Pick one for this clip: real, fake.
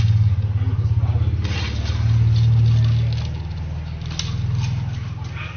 real